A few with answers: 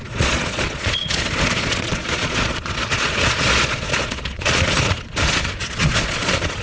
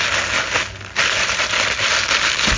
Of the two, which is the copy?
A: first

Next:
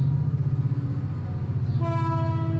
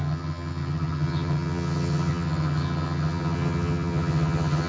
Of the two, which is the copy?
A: second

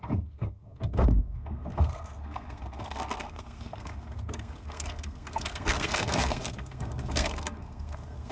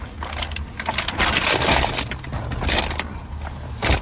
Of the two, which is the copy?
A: first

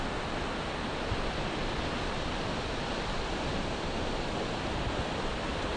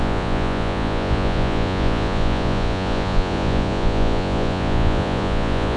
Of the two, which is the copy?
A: second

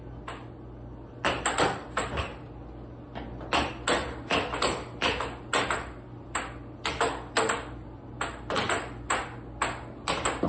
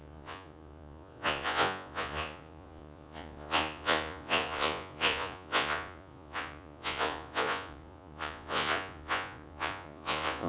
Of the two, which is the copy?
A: second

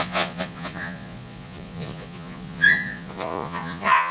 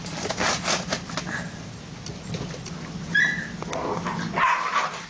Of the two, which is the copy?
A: first